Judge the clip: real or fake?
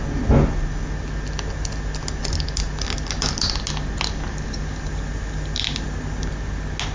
real